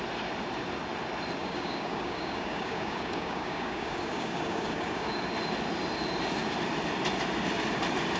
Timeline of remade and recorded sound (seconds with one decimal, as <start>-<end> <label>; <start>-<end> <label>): 0.0-1.4 recorded; 1.4-5.1 remade; 5.1-8.2 recorded